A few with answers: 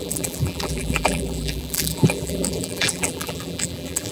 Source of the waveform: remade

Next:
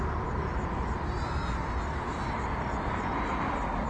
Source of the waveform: recorded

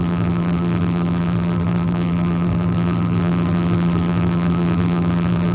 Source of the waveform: remade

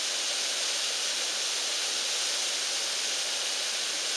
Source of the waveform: recorded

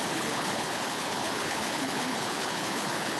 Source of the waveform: remade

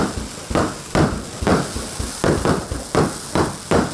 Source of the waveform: recorded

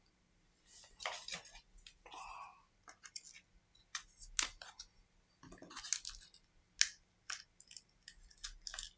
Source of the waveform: recorded